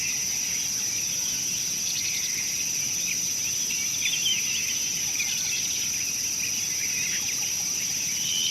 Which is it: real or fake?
real